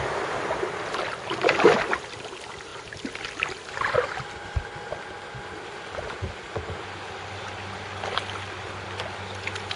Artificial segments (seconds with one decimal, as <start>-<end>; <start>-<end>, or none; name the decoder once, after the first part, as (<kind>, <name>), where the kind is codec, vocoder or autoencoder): none